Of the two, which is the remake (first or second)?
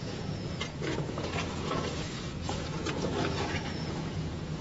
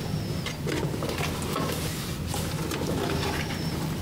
first